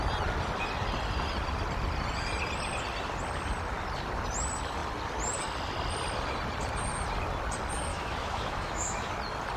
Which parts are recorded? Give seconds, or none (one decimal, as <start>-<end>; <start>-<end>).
0.0-7.9; 9.1-9.6